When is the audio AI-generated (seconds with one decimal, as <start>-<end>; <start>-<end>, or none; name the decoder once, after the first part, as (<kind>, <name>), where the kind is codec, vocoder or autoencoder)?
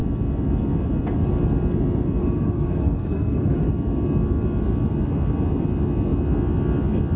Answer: 2.2-3.6 (codec, SNAC)